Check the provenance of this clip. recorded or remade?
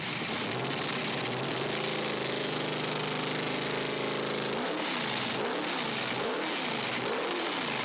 recorded